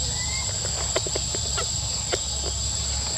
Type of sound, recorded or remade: recorded